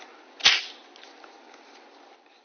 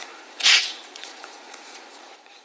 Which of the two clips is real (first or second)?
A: first